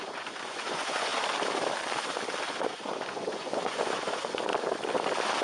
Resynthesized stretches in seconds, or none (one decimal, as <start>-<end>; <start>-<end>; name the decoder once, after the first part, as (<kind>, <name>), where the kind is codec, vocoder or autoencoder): 0.0-1.1 (vocoder, Vocos); 2.5-4.5